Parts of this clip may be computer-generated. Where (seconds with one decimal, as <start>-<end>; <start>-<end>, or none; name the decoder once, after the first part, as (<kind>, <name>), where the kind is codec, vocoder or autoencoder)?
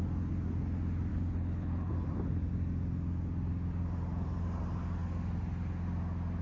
1.1-1.9 (codec, HILCodec)